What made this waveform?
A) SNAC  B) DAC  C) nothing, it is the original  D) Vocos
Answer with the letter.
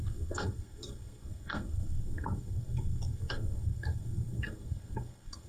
A